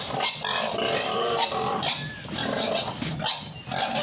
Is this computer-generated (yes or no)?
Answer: no